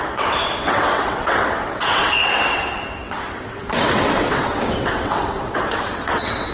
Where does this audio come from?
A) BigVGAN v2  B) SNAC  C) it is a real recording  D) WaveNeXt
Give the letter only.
D